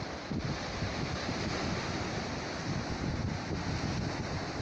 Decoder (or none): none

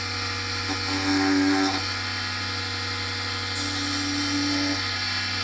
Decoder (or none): none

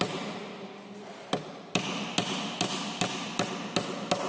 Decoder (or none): none